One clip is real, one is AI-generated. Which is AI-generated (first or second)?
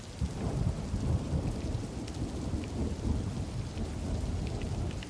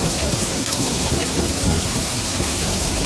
second